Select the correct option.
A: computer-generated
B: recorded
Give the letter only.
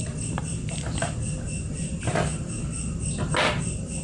B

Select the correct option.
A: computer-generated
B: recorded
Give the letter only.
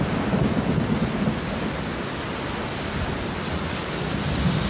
B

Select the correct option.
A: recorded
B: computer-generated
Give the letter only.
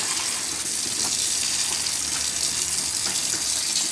A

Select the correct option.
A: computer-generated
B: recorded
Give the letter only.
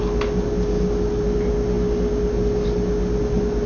B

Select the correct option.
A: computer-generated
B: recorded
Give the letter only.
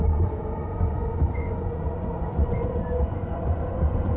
A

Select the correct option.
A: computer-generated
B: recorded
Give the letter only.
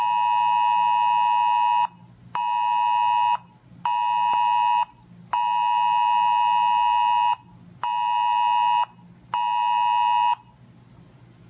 B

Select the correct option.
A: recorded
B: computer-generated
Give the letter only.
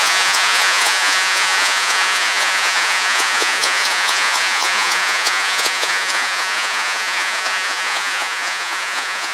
B